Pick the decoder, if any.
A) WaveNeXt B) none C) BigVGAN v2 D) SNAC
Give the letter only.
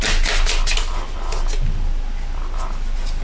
B